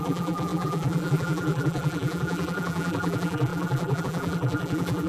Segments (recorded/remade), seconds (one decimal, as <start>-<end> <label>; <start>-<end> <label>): 0.0-5.1 remade